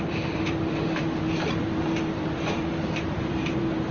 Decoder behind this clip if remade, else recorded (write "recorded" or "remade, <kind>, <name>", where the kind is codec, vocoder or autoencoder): remade, vocoder, BigVGAN v2